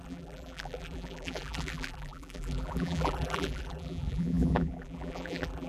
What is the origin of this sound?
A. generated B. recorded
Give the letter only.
A